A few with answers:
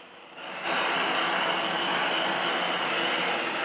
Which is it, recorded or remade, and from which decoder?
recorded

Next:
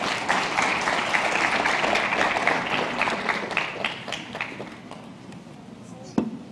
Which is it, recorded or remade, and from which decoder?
recorded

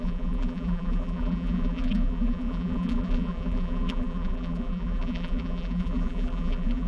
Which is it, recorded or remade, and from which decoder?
remade, vocoder, BigVGAN v2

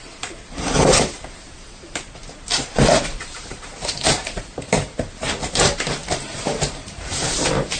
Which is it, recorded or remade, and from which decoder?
remade, vocoder, BigVGAN v2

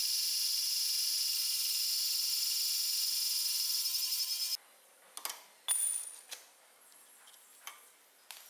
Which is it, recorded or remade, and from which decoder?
recorded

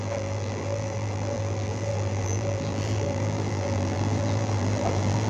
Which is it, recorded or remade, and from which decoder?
remade, vocoder, BigVGAN v2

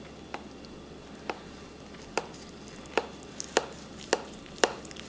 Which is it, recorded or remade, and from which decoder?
recorded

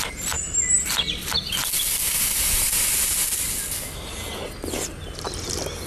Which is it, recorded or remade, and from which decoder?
recorded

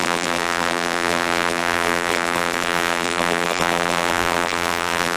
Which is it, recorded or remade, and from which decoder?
remade, vocoder, BigVGAN v2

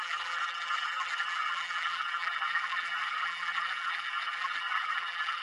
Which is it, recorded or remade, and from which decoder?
remade, vocoder, BigVGAN v2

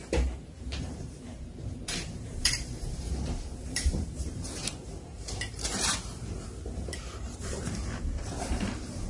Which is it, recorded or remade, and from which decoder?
remade, vocoder, BigVGAN v2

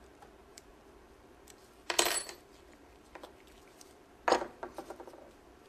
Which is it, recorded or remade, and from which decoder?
remade, vocoder, BigVGAN v2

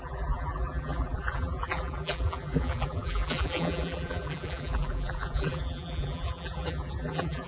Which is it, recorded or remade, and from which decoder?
remade, vocoder, BigVGAN v2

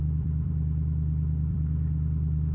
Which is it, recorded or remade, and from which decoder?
remade, vocoder, BigVGAN v2